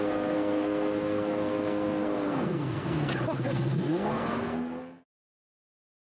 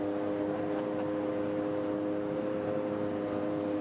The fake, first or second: first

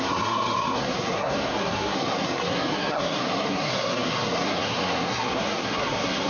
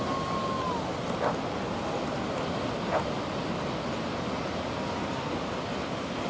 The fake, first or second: first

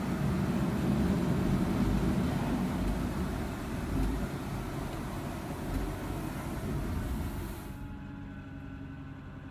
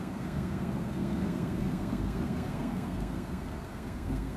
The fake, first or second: second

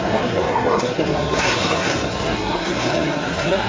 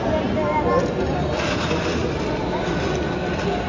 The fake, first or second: first